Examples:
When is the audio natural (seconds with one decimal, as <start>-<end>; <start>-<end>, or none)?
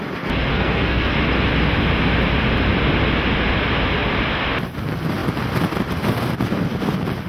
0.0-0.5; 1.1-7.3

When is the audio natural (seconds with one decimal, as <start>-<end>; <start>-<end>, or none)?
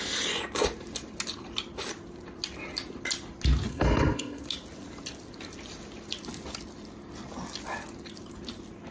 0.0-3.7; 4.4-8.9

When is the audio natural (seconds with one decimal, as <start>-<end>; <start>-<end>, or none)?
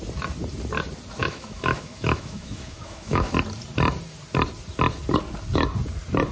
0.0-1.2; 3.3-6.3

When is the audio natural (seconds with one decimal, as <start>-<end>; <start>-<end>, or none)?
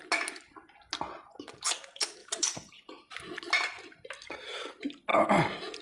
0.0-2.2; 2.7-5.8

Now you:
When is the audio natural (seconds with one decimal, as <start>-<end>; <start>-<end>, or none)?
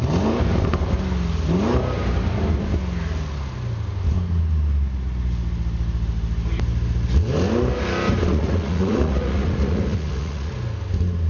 0.0-8.3; 10.5-11.3